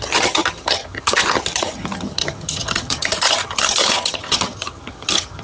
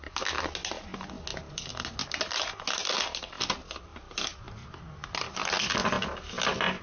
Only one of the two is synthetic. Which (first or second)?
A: first